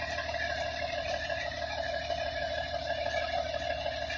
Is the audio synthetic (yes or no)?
no